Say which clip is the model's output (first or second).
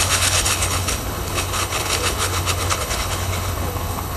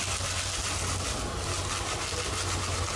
first